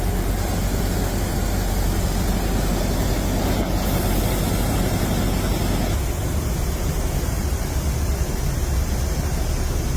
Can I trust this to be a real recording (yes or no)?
yes